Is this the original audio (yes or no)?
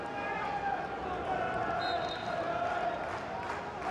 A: yes